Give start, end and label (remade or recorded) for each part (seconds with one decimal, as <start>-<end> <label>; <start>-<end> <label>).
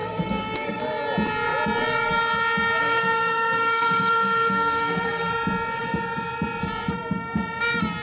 0.0-0.8 remade; 0.8-2.8 recorded; 2.8-5.3 remade; 5.3-8.0 recorded